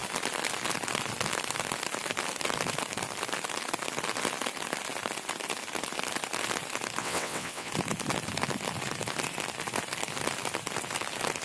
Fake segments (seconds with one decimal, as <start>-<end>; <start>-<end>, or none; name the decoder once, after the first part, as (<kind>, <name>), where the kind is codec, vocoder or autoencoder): 7.0-7.7 (vocoder, WaveNeXt)

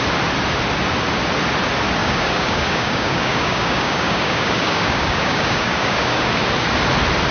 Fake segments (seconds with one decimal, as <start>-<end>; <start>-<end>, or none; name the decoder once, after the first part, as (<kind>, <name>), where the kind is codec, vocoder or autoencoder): 2.0-6.4 (codec, DAC)

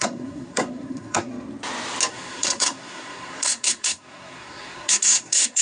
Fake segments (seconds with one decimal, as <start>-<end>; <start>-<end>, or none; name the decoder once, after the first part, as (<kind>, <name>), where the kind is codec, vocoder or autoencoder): 0.0-1.3 (codec, SNAC); 2.1-5.6

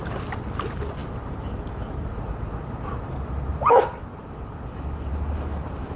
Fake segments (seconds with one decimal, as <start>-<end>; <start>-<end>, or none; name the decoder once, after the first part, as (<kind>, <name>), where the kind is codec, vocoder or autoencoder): none

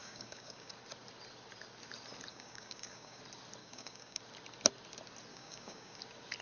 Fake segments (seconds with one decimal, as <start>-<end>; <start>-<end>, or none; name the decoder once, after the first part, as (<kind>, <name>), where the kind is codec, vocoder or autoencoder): 0.0-0.7 (codec, DAC); 2.3-3.2; 3.6-4.2; 5.3-6.0

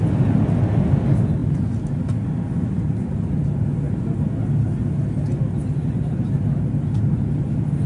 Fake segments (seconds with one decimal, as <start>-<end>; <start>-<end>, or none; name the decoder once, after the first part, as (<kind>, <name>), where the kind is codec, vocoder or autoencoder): none

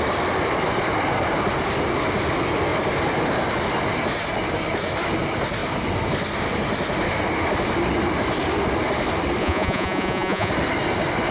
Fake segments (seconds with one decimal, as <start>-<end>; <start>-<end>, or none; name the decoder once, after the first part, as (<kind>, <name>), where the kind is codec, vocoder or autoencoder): 9.4-10.5 (vocoder, Vocos)